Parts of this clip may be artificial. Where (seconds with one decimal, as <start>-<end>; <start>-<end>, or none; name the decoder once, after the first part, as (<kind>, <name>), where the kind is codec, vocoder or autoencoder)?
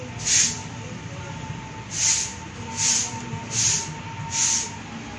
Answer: none